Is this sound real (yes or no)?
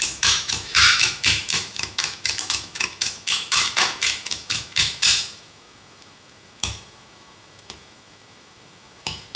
no